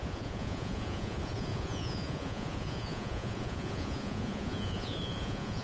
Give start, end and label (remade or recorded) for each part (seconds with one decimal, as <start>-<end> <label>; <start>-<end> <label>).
0.0-5.6 remade